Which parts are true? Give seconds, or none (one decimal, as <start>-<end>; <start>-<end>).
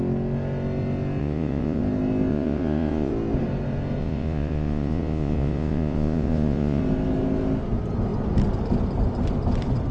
0.0-1.2; 1.8-2.3; 3.1-4.0; 6.8-9.9